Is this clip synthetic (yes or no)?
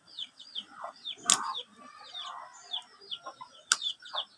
no